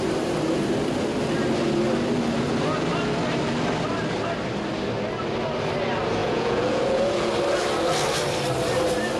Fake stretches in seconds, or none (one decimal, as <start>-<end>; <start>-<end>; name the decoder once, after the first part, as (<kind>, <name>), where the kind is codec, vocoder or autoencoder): 6.2-7.3 (vocoder, Vocos)